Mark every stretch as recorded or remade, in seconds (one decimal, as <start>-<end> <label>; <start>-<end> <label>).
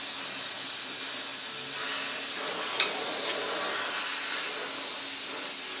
0.0-5.8 recorded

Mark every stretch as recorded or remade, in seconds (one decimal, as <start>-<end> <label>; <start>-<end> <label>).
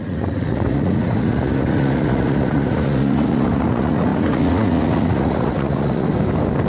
0.0-6.1 remade; 6.1-6.7 recorded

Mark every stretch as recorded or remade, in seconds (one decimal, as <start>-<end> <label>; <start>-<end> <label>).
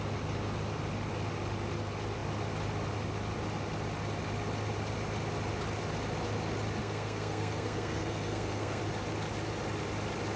0.0-6.8 recorded; 6.8-8.8 remade; 8.8-10.4 recorded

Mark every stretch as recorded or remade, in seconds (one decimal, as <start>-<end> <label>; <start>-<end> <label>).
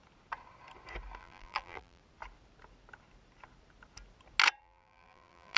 0.0-1.2 recorded; 1.2-2.0 remade; 2.0-4.6 recorded; 4.6-5.6 remade